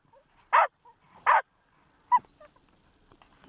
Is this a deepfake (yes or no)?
no